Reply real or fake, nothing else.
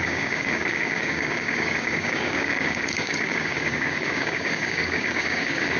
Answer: fake